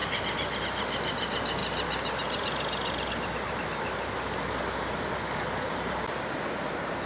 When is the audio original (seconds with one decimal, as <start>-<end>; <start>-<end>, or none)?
0.0-7.1